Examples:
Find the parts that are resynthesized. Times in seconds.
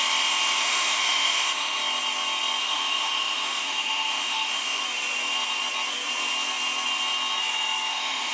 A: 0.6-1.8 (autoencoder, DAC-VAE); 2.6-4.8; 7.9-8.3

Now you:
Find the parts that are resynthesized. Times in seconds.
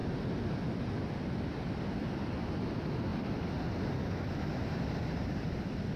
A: 4.0-4.5 (autoencoder, DAC-VAE)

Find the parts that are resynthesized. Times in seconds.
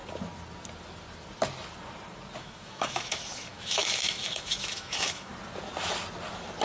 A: 2.4-5.3 (autoencoder, DAC-VAE)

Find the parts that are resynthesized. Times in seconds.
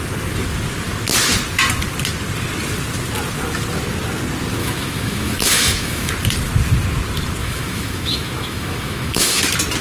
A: 4.6-6.1 (autoencoder, DAC-VAE); 7.4-9.4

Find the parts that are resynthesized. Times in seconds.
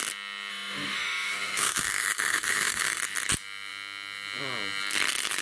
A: 0.5-3.0 (autoencoder, DAC-VAE)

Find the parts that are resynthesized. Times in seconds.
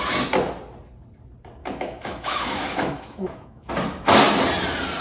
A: 1.6-3.7 (autoencoder, DAC-VAE)